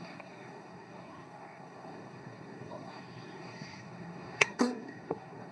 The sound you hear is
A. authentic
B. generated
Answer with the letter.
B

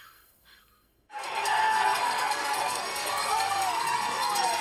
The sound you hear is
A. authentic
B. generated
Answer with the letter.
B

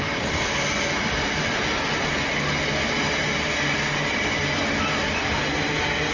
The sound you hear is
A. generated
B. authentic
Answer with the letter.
B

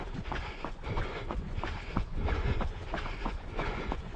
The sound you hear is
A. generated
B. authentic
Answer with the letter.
A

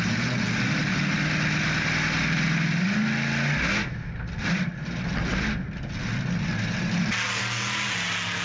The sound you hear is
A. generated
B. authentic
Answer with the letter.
B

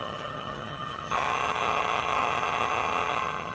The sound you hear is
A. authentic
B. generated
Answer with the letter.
B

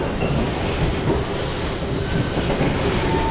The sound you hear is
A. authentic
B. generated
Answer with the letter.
A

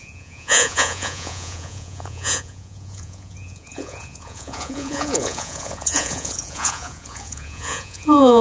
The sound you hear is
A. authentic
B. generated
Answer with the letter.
B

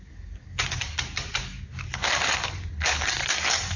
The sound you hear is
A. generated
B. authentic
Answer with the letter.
A